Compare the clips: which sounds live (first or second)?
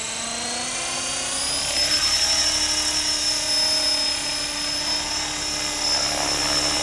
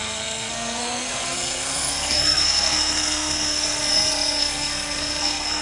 first